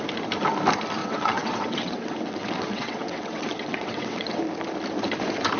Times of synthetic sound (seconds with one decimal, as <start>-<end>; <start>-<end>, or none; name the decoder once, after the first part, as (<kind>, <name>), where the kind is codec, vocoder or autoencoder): 1.0-4.4 (vocoder, WaveNeXt)

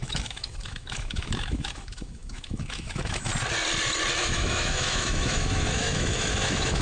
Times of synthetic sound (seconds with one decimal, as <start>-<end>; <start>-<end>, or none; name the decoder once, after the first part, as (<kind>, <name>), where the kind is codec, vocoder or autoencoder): 0.0-3.3 (autoencoder, DAC-VAE); 4.2-6.8

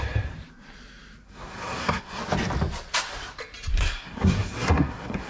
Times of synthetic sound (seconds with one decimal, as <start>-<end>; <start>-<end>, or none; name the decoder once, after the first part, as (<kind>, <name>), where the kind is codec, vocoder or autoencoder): 1.2-2.2 (codec, SNAC); 3.7-5.3

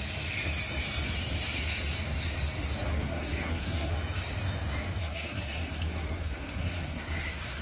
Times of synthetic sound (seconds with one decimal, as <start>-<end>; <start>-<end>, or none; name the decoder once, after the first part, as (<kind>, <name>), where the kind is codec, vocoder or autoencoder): 2.9-3.9 (codec, SNAC); 5.0-7.6

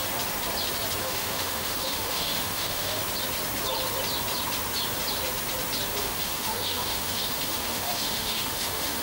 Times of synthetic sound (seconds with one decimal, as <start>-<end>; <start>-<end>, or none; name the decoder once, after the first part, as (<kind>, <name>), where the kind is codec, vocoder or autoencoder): 1.0-3.0 (autoencoder, DAC-VAE); 6.0-9.0

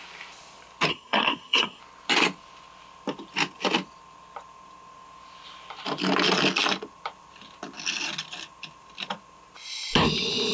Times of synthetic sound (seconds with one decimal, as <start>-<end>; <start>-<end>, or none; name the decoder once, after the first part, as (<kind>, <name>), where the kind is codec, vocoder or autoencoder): 0.9-1.8 (codec, SNAC)

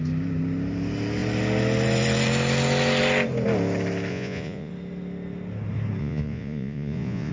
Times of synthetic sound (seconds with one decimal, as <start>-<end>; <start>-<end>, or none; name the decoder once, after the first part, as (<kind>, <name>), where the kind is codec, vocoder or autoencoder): 4.1-4.7 (vocoder, Vocos); 6.0-7.3